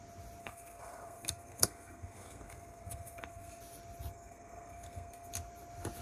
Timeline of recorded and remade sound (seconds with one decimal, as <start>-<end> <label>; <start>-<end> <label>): 0.0-0.4 recorded; 0.4-3.6 remade; 3.6-4.1 recorded; 4.1-5.3 remade; 5.3-6.0 recorded